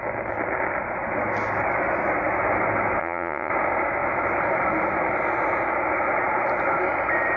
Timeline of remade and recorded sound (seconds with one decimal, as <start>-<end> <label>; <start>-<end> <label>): 0.0-3.0 recorded; 3.0-3.5 remade; 3.5-7.4 recorded